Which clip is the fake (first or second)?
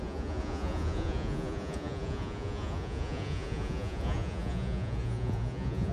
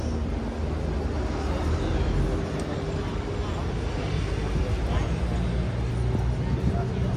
first